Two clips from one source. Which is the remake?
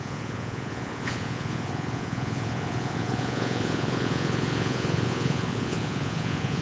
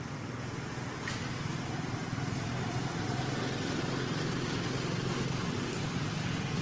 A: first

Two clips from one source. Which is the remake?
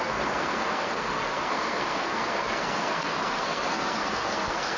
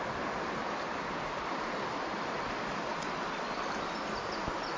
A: first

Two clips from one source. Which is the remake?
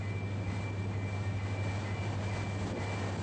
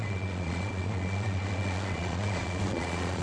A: second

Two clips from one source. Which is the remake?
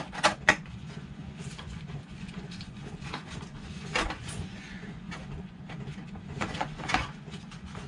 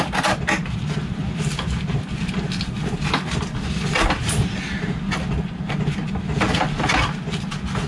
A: first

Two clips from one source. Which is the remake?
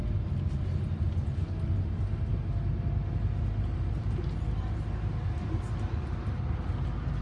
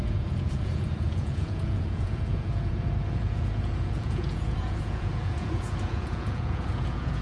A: second